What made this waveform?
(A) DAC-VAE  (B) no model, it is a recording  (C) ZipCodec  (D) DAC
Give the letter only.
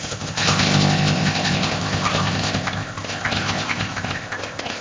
C